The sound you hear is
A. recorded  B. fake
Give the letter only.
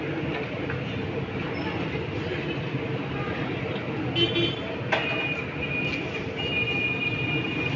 A